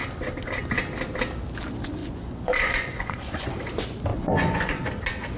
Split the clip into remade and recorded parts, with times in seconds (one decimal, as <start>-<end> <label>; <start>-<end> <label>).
0.0-2.0 recorded; 2.0-3.5 remade; 3.5-4.1 recorded; 4.1-4.8 remade; 4.8-5.4 recorded